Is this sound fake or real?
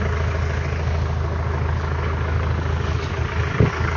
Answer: fake